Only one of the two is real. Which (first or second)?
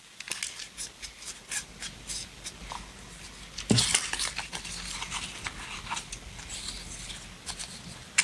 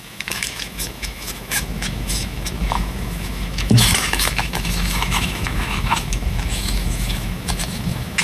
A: first